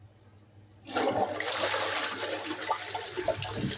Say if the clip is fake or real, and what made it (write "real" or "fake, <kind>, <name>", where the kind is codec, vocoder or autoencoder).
real